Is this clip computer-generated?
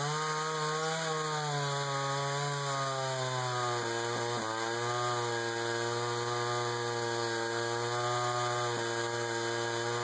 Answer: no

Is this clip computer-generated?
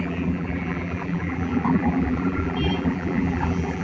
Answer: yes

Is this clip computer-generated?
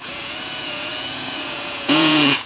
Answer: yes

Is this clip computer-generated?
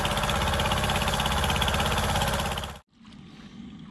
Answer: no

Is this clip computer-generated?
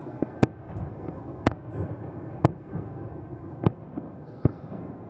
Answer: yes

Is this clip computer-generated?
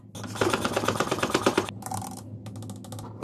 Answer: no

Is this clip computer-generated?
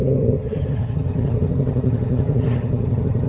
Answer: yes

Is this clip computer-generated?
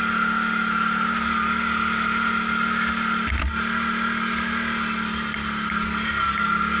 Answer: no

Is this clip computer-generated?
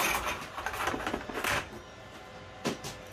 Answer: no